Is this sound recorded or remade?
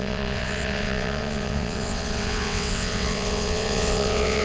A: remade